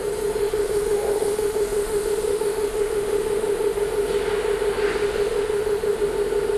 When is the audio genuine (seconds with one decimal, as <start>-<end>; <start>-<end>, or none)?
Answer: 0.0-0.4; 3.8-5.0; 6.0-6.6